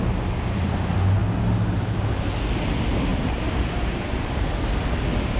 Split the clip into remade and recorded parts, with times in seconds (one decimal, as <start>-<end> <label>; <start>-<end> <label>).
0.0-3.1 recorded; 3.1-4.5 remade; 4.5-5.4 recorded